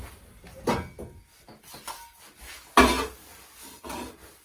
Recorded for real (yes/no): yes